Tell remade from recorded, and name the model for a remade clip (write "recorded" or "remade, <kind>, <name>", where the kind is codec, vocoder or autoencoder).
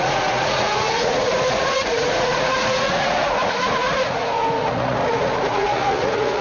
remade, vocoder, Vocos